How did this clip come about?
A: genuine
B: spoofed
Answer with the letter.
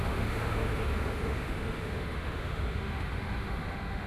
B